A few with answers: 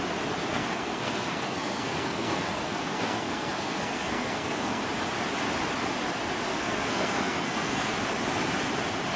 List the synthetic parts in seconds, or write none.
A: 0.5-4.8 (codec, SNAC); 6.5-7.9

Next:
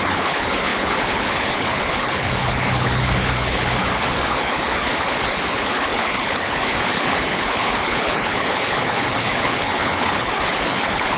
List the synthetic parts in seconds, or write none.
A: 0.0-11.2 (codec, HILCodec)

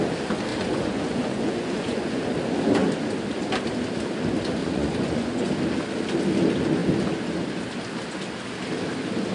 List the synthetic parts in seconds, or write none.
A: 0.5-2.2 (vocoder, Vocos); 4.6-5.5